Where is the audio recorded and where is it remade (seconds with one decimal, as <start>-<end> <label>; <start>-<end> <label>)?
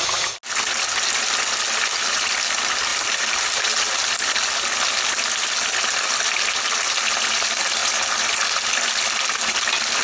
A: 0.0-2.9 recorded; 2.9-3.7 remade; 3.7-10.0 recorded